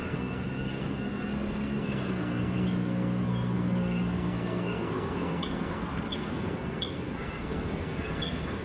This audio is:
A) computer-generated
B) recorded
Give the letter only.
A